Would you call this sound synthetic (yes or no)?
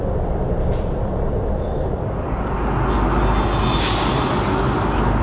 no